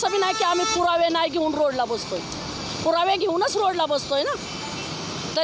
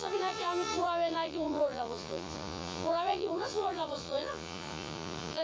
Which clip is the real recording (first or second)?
first